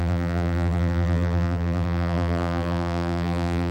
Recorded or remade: remade